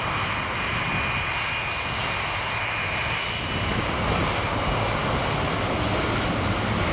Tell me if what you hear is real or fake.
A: real